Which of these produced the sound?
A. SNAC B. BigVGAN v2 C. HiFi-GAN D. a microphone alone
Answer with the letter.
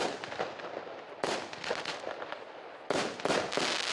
D